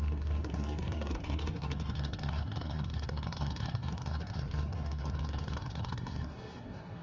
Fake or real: fake